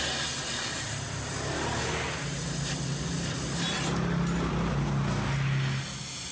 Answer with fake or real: real